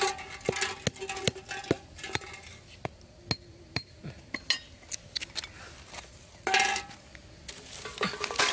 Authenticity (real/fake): real